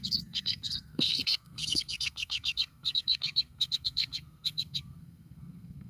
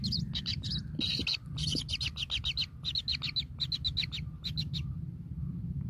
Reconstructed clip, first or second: first